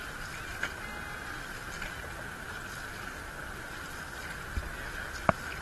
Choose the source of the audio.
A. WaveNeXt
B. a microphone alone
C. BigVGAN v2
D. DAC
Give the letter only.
B